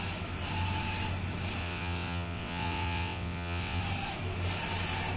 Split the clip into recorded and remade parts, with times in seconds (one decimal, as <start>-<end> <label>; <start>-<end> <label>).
0.0-1.6 recorded; 1.6-3.8 remade; 3.8-5.2 recorded